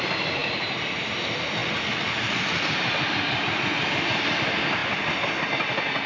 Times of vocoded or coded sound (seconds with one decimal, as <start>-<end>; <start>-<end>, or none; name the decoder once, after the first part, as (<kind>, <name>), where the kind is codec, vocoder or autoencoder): 0.4-1.1 (vocoder, BigVGAN v2); 1.6-2.9